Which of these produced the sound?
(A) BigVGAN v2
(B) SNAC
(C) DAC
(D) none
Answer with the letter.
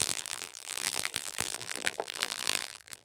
A